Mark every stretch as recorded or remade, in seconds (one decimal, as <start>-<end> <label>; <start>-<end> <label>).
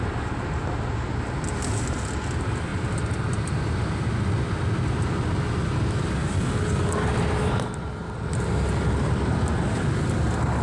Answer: 0.0-10.6 recorded